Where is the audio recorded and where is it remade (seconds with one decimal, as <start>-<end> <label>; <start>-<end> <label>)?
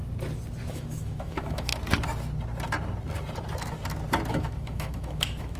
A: 0.0-0.7 recorded; 0.7-1.7 remade; 1.7-4.3 recorded; 4.3-5.6 remade